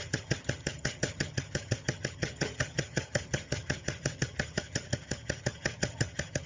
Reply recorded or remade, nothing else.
remade